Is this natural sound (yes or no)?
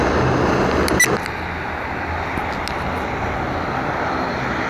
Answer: yes